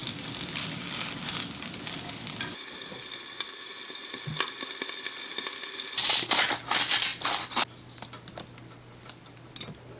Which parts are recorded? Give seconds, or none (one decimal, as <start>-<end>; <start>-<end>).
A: 0.0-10.0